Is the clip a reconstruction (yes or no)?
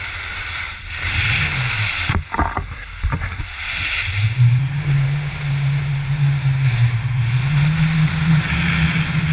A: no